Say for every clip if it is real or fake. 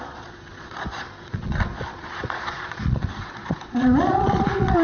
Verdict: fake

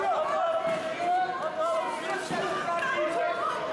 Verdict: real